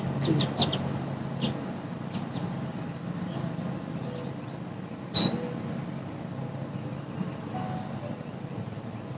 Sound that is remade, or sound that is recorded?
recorded